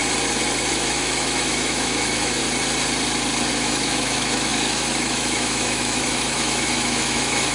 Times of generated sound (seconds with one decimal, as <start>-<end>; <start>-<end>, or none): 0.7-2.4; 3.5-7.5